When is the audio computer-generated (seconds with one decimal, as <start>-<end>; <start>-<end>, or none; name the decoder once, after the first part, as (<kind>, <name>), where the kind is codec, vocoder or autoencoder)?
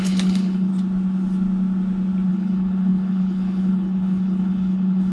0.0-0.7 (codec, HILCodec); 2.3-5.1